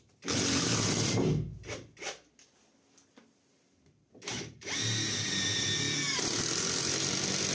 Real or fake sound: real